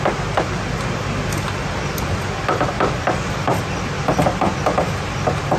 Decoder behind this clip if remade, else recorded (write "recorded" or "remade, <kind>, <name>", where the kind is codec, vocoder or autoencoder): recorded